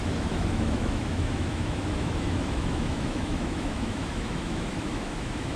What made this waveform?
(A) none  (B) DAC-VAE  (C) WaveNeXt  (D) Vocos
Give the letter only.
B